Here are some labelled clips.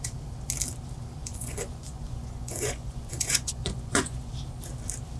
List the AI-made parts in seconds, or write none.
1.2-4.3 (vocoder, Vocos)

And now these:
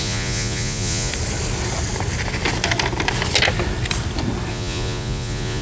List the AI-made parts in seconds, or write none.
0.0-1.1 (vocoder, Vocos); 4.5-5.6

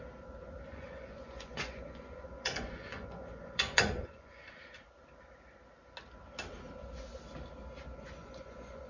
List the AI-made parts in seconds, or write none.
0.7-4.5 (vocoder, Vocos); 8.2-8.9

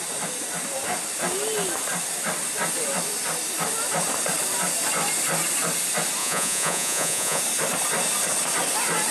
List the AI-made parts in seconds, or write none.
6.2-7.4 (vocoder, Vocos)

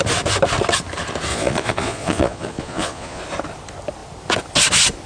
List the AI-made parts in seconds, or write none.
1.3-3.2 (vocoder, Vocos)

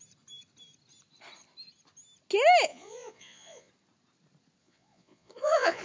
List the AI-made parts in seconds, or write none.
2.7-3.7 (vocoder, Vocos); 4.6-5.8

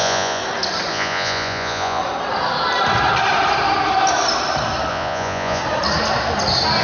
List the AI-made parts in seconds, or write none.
0.0-0.4 (vocoder, Vocos); 0.9-2.0; 4.9-5.6